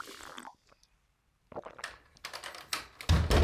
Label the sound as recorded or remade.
recorded